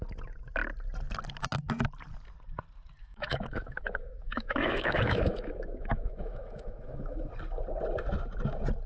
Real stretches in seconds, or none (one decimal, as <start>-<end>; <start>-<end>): 0.0-3.0; 7.3-8.9